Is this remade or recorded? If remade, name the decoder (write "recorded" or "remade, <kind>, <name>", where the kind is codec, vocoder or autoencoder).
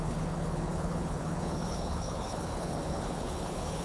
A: remade, codec, HILCodec